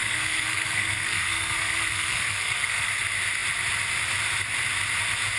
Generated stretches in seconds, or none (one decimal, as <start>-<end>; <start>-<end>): 0.0-3.0